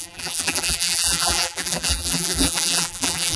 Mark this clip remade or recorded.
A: remade